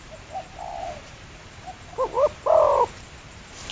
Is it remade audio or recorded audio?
remade